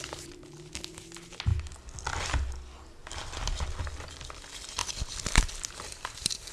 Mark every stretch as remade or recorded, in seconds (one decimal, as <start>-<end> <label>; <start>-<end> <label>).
0.0-6.5 recorded